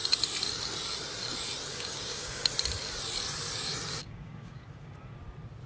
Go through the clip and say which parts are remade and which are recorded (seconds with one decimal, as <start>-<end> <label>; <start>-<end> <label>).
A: 0.0-1.7 recorded; 1.7-2.5 remade; 2.5-4.0 recorded; 4.0-4.9 remade; 4.9-5.7 recorded